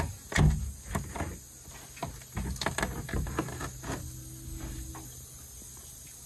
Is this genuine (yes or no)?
yes